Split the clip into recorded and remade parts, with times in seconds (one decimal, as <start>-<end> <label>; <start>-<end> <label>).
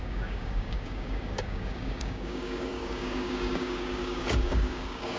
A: 0.0-5.2 remade